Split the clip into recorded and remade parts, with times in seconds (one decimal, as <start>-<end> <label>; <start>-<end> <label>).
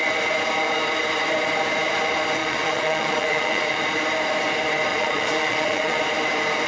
0.0-2.4 recorded; 2.4-3.8 remade; 3.8-4.9 recorded; 4.9-6.0 remade; 6.0-6.7 recorded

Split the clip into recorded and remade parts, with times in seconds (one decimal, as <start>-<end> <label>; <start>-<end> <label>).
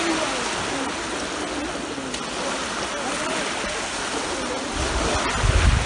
0.0-5.9 recorded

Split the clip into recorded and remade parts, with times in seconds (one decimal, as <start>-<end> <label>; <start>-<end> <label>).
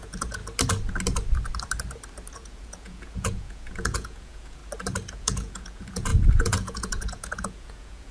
0.0-0.4 remade; 0.4-2.3 recorded; 2.3-4.6 remade; 4.6-5.1 recorded; 5.1-8.1 remade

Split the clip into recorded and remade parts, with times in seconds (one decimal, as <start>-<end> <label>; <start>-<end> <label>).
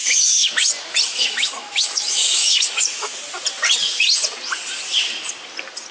0.0-0.7 remade; 0.7-1.1 recorded; 1.1-3.1 remade; 3.1-5.9 recorded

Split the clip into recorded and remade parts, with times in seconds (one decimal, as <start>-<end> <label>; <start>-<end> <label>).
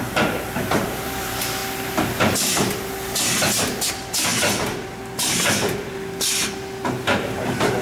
0.0-1.6 remade; 1.6-3.9 recorded; 3.9-4.3 remade; 4.3-7.2 recorded; 7.2-7.8 remade